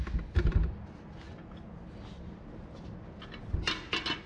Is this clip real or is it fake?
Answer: real